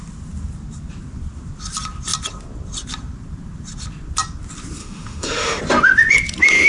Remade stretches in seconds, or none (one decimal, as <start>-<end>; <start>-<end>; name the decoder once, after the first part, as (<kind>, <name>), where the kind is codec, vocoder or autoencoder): 4.8-5.6 (autoencoder, DAC-VAE)